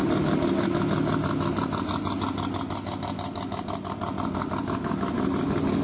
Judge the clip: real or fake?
real